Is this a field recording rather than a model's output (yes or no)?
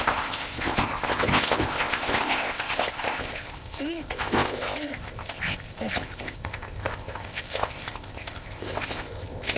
no